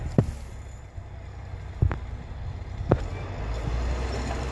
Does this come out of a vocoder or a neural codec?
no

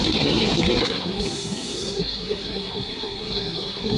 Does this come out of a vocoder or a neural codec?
yes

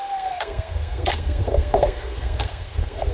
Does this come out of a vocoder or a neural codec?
yes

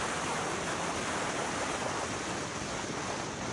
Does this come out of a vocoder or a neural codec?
no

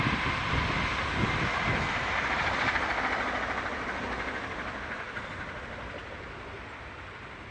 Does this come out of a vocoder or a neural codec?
no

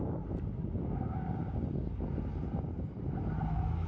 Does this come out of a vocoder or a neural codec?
no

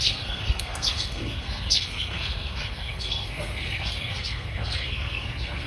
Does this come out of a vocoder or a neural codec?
yes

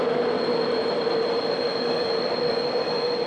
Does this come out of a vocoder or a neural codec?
no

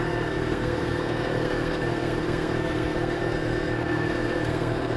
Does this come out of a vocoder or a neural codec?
yes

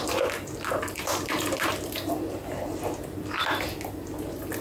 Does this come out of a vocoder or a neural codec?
no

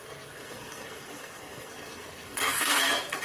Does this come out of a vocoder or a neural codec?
yes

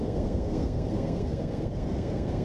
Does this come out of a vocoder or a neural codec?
yes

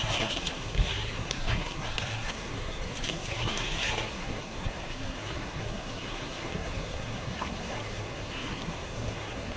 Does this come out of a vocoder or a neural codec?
yes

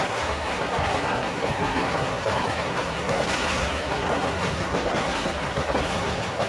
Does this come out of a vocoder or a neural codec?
yes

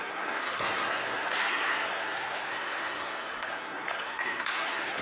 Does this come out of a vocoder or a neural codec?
yes